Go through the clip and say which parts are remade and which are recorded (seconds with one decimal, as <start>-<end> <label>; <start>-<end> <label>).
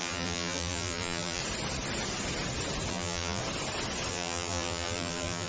0.0-1.4 remade; 1.4-2.9 recorded; 2.9-3.4 remade; 3.4-4.1 recorded; 4.1-5.5 remade